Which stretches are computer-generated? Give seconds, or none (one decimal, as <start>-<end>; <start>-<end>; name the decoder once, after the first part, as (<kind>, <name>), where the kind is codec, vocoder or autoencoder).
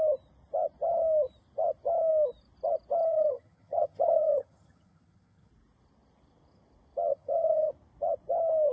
3.1-5.5 (vocoder, HiFi-GAN); 7.1-7.7